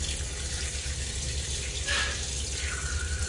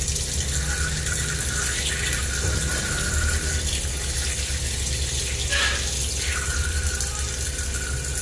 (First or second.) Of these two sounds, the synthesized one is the first